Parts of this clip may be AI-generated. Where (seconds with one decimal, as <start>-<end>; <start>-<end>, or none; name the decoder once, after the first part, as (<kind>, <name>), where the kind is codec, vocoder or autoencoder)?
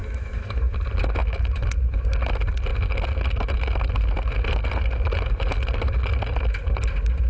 0.0-0.6 (autoencoder, DAC-VAE); 1.2-1.7